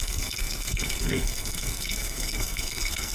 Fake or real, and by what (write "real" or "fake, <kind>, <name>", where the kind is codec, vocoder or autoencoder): fake, codec, SNAC